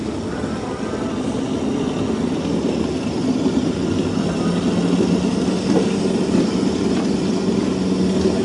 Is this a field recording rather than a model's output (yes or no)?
yes